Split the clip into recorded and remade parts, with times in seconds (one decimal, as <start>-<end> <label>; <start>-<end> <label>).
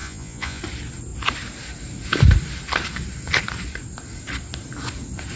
0.0-0.6 remade; 0.6-5.4 recorded